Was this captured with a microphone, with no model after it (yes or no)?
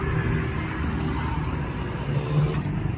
yes